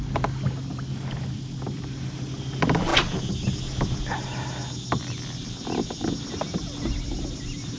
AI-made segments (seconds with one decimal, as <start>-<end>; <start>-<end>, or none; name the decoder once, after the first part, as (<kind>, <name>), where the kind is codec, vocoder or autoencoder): none